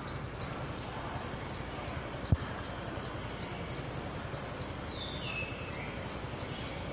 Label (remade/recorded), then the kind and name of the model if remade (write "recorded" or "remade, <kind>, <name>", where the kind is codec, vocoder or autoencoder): recorded